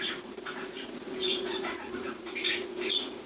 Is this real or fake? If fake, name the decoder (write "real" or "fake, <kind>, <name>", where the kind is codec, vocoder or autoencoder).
fake, vocoder, Vocos